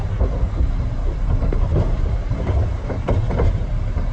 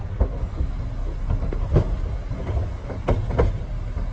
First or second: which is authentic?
second